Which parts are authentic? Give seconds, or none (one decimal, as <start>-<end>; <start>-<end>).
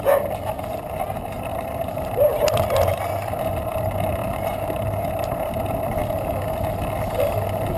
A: 0.0-1.5; 2.4-4.2; 5.4-7.8